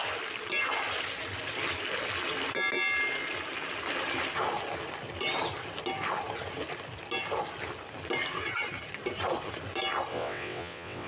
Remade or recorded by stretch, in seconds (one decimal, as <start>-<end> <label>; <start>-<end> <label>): 0.0-10.1 recorded; 10.1-11.1 remade